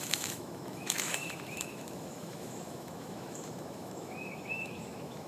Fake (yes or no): yes